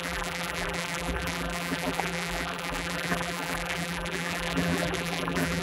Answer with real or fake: fake